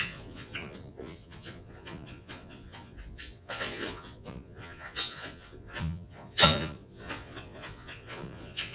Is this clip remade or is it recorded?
remade